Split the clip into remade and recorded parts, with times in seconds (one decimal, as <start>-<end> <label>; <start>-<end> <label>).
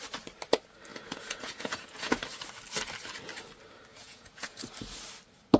0.0-0.9 recorded; 0.9-2.2 remade; 2.2-3.9 recorded; 3.9-4.6 remade; 4.6-5.6 recorded